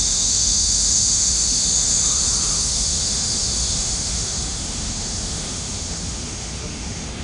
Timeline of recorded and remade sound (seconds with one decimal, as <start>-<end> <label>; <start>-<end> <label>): 0.0-7.2 remade